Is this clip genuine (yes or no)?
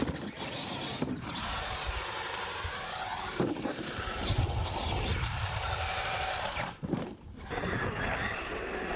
no